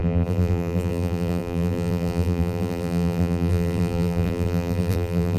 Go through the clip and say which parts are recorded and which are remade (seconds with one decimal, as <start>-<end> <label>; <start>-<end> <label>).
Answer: 0.0-5.4 remade